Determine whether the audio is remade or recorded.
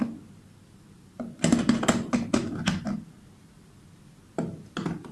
recorded